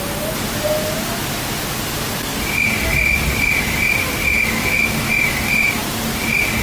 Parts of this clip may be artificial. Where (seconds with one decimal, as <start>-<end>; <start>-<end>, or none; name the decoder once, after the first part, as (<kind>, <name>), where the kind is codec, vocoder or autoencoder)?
2.3-3.6 (vocoder, BigVGAN v2)